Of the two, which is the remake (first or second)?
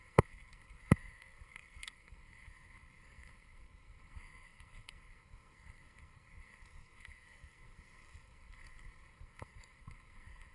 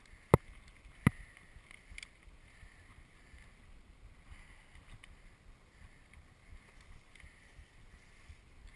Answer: first